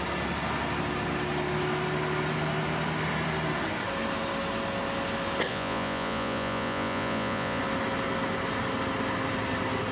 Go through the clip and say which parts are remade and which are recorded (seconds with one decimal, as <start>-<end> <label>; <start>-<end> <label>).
0.0-5.5 recorded; 5.5-7.6 remade; 7.6-9.9 recorded